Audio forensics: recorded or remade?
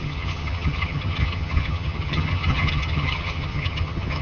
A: remade